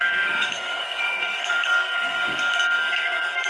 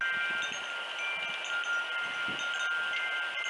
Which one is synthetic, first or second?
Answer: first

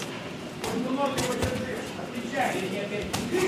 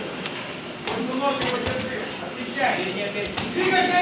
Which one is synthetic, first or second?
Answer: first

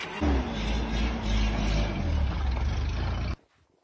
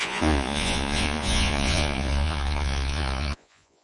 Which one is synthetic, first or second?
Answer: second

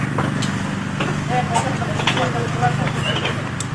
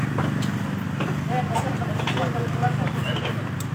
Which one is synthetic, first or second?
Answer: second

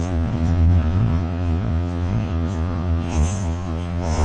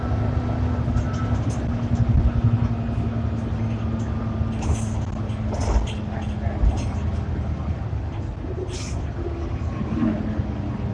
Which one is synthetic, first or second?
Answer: first